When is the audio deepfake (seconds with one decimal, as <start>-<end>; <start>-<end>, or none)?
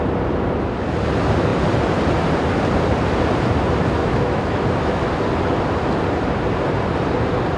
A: 4.0-5.1